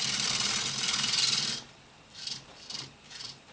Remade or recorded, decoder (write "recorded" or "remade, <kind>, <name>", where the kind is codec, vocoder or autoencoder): remade, vocoder, BigVGAN v2